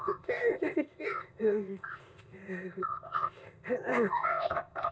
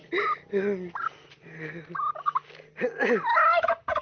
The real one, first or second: second